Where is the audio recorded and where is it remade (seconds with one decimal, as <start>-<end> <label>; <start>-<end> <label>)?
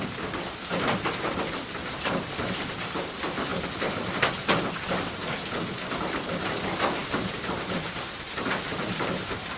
0.0-9.6 recorded